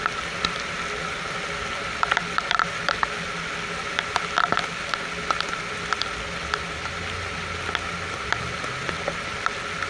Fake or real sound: real